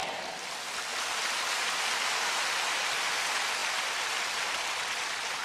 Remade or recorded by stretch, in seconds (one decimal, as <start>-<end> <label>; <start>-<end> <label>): 0.0-5.4 recorded

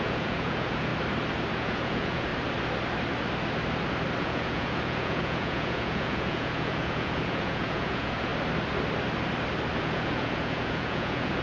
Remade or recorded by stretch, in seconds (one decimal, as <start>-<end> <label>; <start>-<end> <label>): 0.0-0.9 remade; 0.9-1.5 recorded; 1.5-2.3 remade; 2.3-4.2 recorded; 4.2-8.3 remade; 8.3-9.8 recorded; 9.8-11.4 remade

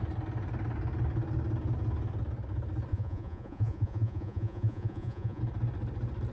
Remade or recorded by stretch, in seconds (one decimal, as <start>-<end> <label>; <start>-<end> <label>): 0.0-2.9 recorded; 2.9-5.4 remade; 5.4-6.3 recorded